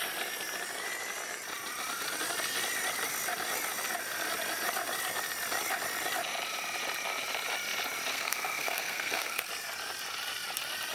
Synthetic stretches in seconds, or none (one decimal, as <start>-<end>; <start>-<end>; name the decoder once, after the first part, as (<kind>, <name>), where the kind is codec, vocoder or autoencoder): 8.1-9.5 (codec, SNAC)